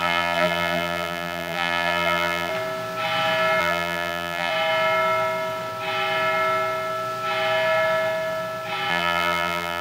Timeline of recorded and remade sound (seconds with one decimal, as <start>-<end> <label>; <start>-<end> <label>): 0.0-2.5 remade; 2.5-3.6 recorded; 3.6-4.5 remade; 4.5-8.9 recorded; 8.9-9.8 remade